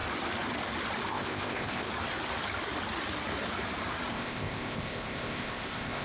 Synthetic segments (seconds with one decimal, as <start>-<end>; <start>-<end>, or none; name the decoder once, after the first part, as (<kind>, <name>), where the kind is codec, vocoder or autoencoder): 1.1-1.9 (codec, ZipCodec); 4.1-6.0